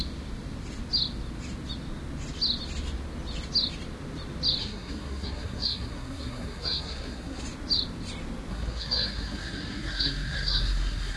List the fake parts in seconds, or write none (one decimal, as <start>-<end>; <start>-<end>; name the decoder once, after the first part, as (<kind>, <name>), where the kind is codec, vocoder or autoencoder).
4.6-7.4 (codec, SNAC); 8.5-11.2